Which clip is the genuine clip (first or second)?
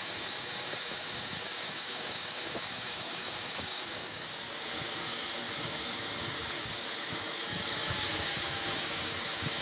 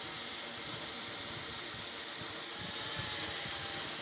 second